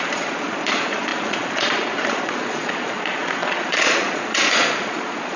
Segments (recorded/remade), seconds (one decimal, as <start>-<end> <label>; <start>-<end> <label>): 0.0-5.4 remade